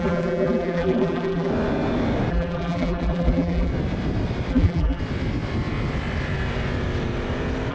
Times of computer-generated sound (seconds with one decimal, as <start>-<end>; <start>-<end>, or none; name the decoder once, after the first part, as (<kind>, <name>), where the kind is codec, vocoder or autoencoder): 0.0-1.5 (vocoder, BigVGAN v2); 2.3-3.7; 4.5-5.0